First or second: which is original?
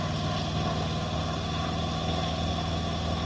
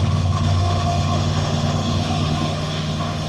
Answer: first